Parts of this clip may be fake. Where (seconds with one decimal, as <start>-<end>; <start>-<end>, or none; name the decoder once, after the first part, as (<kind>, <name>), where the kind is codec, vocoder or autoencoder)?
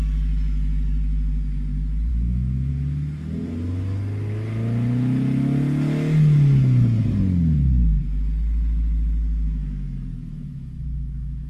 2.1-2.7 (autoencoder, DAC-VAE); 10.1-11.5